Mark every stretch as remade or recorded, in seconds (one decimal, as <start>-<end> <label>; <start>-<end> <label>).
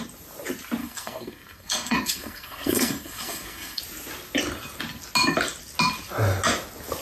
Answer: 0.0-0.8 recorded; 0.8-3.8 remade; 3.8-7.0 recorded